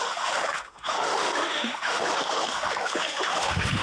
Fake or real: fake